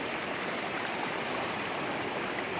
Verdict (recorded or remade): recorded